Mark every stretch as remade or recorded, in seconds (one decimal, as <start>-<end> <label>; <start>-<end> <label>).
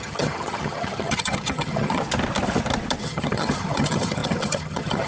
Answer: 0.0-2.0 remade; 2.0-3.0 recorded; 3.0-5.1 remade